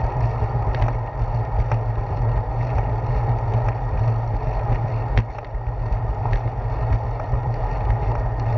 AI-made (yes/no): no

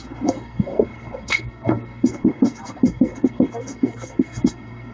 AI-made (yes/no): yes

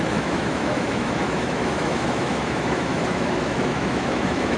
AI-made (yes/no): yes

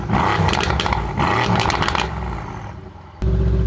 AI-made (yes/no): no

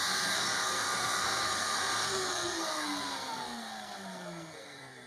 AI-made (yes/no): yes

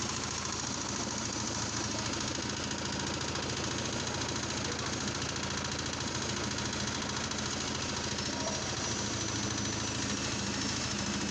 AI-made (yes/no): no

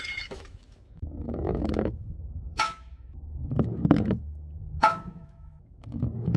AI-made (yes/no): yes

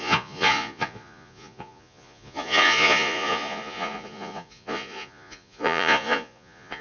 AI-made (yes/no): yes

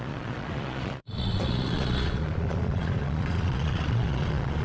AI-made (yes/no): yes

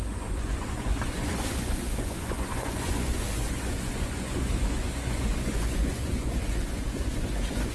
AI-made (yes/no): yes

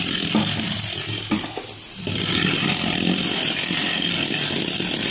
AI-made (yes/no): yes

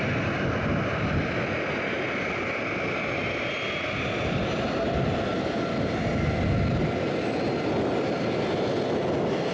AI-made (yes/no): no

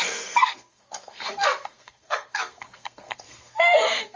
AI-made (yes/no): yes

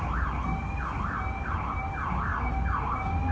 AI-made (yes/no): no